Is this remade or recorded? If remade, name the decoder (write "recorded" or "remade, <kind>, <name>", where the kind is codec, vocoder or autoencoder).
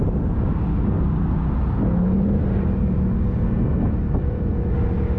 recorded